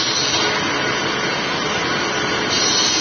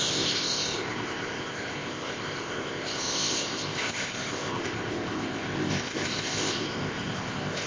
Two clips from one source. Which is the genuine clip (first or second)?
first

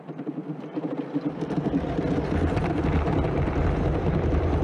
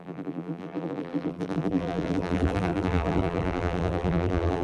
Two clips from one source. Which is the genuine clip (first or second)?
first